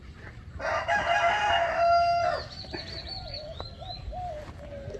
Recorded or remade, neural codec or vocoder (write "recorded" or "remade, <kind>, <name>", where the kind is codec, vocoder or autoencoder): recorded